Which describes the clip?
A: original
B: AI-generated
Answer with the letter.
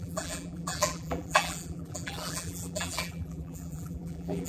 B